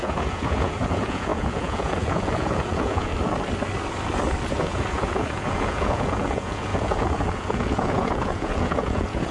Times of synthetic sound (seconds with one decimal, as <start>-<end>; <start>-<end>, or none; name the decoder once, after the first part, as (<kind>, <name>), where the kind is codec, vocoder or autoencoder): 0.0-3.1 (vocoder, Vocos); 4.5-9.3